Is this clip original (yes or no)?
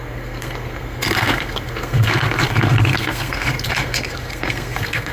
no